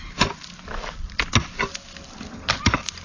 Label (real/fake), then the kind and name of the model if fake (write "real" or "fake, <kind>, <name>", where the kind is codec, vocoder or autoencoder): real